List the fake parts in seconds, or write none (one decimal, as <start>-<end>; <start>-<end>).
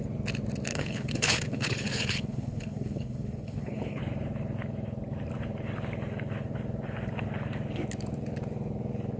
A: 0.7-4.0